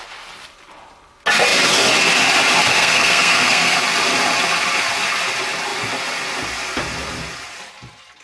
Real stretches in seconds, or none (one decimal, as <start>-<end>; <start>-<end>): 0.0-2.7; 3.8-8.2